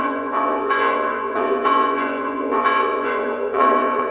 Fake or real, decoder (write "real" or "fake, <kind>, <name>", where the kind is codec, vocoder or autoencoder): fake, vocoder, Vocos